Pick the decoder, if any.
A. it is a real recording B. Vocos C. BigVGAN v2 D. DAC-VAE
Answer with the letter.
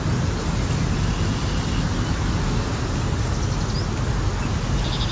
A